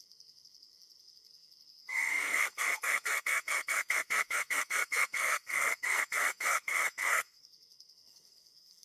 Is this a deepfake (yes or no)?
yes